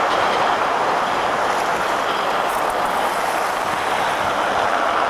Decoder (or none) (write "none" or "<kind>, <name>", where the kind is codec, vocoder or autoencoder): none